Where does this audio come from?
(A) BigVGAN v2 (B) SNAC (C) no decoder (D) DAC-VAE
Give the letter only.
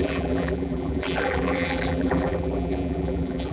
A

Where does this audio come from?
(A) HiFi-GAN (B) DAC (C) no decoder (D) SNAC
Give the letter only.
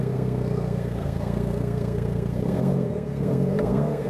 D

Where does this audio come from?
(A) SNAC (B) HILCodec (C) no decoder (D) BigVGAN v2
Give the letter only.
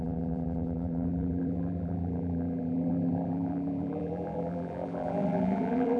D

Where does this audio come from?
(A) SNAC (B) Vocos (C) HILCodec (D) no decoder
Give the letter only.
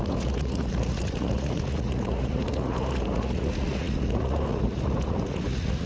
B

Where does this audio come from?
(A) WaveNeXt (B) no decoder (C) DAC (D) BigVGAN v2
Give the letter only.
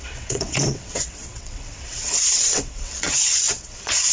A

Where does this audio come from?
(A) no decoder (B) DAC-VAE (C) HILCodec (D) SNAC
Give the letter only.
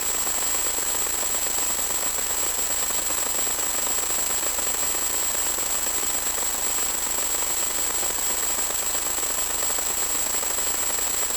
A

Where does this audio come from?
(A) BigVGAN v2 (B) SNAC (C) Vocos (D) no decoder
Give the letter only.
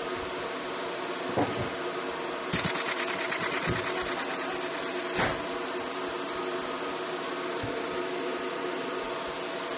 D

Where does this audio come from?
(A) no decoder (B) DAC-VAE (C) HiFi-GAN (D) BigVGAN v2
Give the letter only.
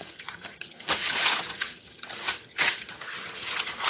C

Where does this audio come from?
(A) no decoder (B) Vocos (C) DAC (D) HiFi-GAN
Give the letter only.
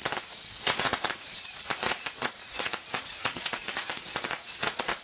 B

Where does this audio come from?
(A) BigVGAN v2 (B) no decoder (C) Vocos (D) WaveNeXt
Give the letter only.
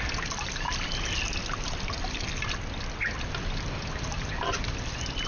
B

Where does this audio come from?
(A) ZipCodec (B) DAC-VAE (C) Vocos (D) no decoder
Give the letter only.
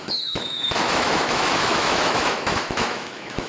B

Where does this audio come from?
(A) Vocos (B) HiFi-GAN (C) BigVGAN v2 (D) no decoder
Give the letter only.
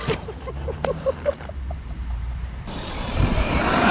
C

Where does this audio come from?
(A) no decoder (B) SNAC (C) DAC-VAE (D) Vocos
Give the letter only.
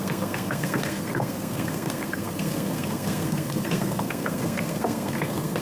B